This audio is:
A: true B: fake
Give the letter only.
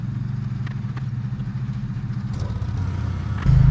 A